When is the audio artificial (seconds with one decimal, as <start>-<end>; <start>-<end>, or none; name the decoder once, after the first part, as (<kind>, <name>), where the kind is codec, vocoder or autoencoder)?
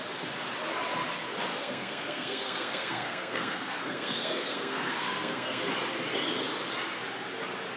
1.5-5.6 (codec, SNAC)